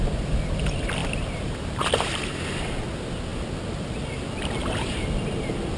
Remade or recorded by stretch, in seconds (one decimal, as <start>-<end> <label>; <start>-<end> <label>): 0.0-1.0 recorded; 1.0-2.7 remade; 2.7-4.6 recorded; 4.6-5.1 remade; 5.1-5.8 recorded